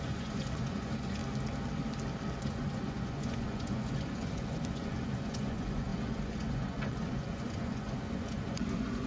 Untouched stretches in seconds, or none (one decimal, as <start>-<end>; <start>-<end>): 1.2-2.4